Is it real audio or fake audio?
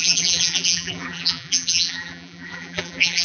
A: fake